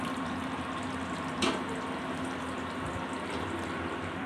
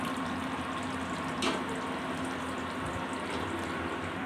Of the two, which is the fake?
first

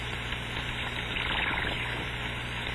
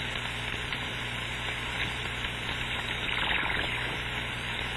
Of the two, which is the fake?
second